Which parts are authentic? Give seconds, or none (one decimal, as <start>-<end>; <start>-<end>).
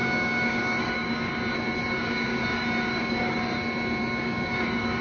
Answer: 1.3-1.8; 3.4-4.0